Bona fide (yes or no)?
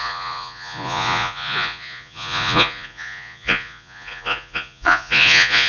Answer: no